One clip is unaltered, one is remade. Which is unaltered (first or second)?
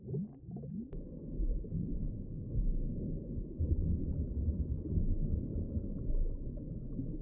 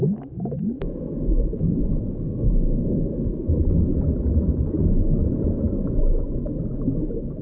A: first